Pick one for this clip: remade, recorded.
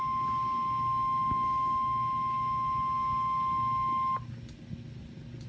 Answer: recorded